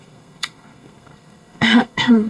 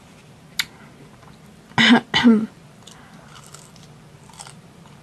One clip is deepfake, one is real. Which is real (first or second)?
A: second